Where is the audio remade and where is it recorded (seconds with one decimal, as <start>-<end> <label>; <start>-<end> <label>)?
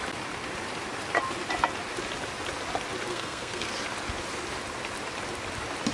0.0-3.1 recorded; 3.1-3.7 remade; 3.7-5.9 recorded